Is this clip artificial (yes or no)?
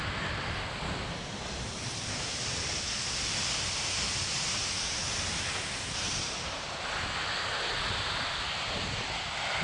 no